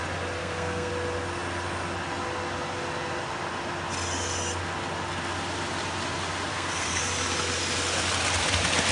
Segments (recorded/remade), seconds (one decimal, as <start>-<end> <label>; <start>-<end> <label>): 0.0-0.4 recorded; 0.4-0.9 remade; 0.9-6.5 recorded; 6.5-7.0 remade; 7.0-8.9 recorded